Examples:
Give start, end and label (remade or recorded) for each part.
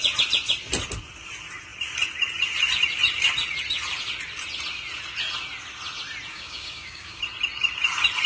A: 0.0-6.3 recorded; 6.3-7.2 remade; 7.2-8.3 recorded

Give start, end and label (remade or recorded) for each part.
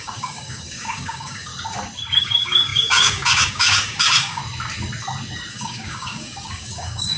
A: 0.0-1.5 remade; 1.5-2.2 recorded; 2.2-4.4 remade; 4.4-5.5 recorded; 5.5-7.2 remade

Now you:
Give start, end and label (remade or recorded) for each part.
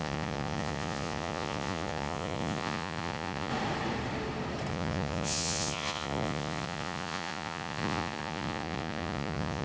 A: 0.0-3.5 remade; 3.5-4.7 recorded; 4.7-9.6 remade